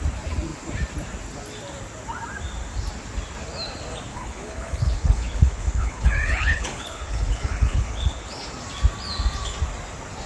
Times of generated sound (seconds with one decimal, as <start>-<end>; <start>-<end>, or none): 4.1-8.5